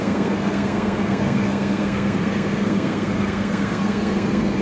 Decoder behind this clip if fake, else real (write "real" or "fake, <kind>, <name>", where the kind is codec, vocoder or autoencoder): fake, codec, SNAC